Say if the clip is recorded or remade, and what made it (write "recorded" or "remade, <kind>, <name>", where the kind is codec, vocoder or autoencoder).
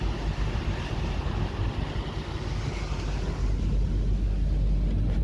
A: recorded